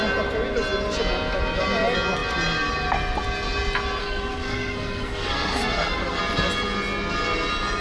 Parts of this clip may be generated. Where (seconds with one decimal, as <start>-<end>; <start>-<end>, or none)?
4.0-6.2